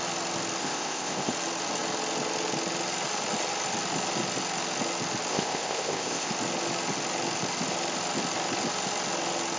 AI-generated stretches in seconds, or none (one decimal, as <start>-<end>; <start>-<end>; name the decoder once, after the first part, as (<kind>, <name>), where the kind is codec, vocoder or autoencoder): 0.6-1.3 (codec, ZipCodec); 5.3-6.3